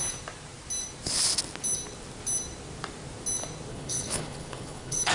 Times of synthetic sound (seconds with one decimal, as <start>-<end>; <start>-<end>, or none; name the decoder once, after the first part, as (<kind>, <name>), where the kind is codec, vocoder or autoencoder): 3.7-5.1 (codec, HILCodec)